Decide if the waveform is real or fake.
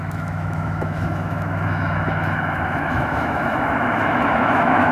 fake